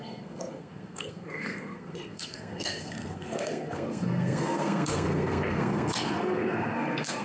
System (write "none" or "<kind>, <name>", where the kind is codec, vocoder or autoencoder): codec, SNAC